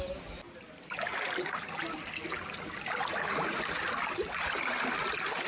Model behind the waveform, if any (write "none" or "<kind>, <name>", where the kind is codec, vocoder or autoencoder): none